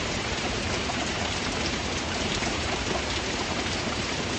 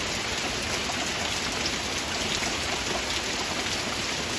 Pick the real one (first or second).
second